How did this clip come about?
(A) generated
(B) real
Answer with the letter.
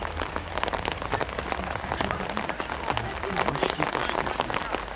B